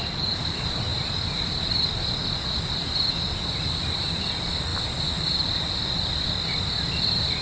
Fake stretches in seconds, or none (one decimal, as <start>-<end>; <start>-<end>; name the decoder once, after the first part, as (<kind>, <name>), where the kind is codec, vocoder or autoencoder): none